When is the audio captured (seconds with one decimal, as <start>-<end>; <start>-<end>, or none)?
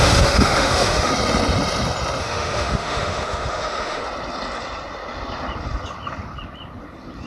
1.1-2.2; 4.0-7.3